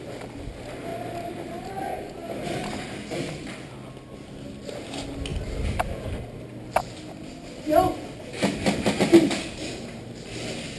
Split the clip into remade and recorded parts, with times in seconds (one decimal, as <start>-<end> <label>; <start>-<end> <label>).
0.0-0.9 recorded; 0.9-1.7 remade; 1.7-10.8 recorded